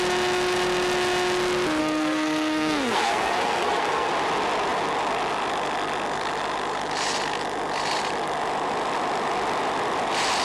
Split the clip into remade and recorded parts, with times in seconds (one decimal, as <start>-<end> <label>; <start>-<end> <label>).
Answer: 0.0-1.8 recorded; 1.8-4.1 remade; 4.1-10.4 recorded